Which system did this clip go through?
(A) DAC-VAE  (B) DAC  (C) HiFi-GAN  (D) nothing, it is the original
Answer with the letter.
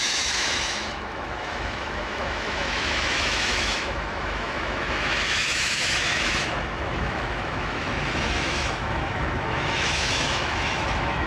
A